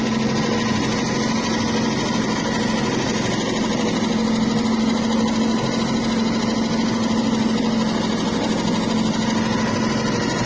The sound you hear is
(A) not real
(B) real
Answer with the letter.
B